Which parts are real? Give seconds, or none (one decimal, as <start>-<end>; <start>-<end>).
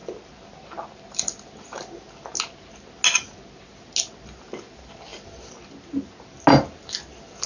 0.0-7.5